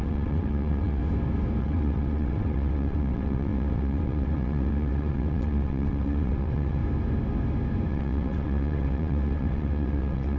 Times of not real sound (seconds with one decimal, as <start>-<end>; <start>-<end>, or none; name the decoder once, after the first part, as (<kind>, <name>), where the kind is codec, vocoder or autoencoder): 0.0-1.0 (vocoder, WaveNeXt); 1.6-6.8; 7.9-10.4